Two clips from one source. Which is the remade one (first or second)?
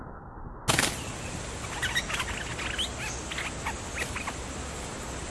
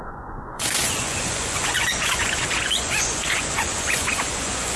second